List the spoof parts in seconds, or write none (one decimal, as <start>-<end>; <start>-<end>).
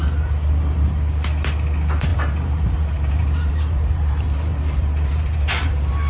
2.1-6.1